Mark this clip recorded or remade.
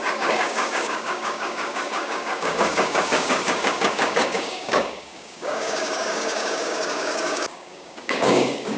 remade